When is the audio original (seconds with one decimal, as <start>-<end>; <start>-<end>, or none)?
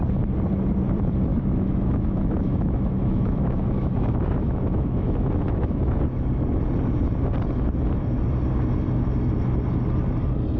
0.0-1.3; 6.0-10.6